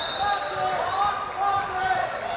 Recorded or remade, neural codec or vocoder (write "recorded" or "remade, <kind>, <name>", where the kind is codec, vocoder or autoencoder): recorded